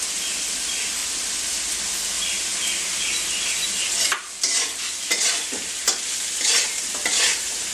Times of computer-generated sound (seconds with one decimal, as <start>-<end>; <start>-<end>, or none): none